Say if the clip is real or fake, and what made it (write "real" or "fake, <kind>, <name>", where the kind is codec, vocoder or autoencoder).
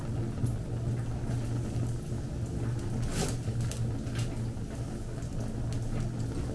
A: real